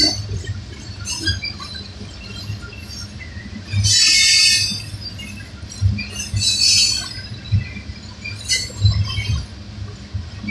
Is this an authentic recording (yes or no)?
yes